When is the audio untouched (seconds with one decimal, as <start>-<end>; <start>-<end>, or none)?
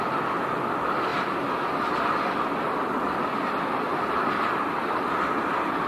0.0-5.9